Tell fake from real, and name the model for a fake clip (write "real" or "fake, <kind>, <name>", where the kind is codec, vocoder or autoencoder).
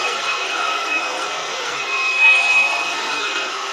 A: fake, codec, SNAC